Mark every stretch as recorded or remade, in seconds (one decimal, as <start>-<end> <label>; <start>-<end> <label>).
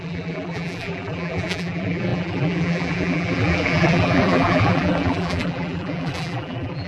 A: 0.0-6.9 remade